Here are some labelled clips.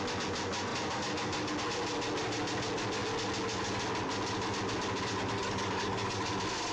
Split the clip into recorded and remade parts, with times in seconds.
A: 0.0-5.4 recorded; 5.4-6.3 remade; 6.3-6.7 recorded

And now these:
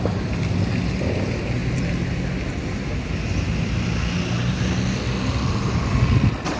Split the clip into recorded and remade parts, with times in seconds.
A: 0.0-6.6 recorded

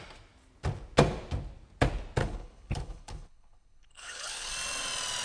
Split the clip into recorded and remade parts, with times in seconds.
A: 0.0-2.2 recorded; 2.2-4.5 remade; 4.5-5.2 recorded

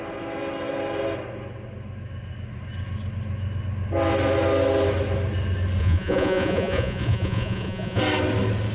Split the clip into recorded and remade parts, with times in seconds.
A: 0.0-5.8 recorded; 5.8-8.0 remade; 8.0-8.7 recorded

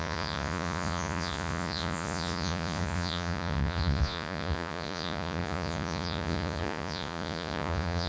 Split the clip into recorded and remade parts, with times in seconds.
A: 0.0-8.1 remade